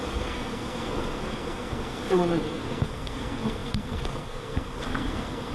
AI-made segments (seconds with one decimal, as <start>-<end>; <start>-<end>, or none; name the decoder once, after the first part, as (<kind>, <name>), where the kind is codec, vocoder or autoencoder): 0.0-5.5 (codec, SNAC)